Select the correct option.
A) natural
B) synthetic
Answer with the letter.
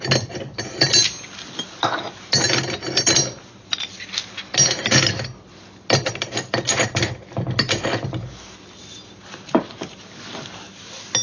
A